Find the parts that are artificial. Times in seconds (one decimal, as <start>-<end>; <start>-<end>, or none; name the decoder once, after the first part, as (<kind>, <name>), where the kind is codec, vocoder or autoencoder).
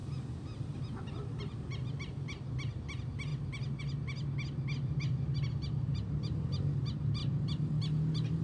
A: none